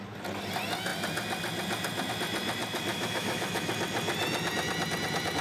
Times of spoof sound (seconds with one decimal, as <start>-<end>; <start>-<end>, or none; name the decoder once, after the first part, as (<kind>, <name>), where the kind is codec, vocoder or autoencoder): 2.9-3.7 (autoencoder, DAC-VAE)